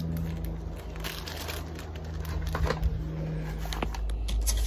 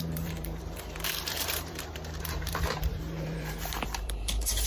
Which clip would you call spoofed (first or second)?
second